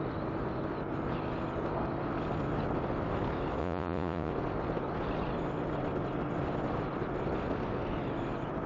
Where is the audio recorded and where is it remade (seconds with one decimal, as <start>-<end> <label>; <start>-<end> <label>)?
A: 0.0-3.6 recorded; 3.6-4.3 remade; 4.3-8.7 recorded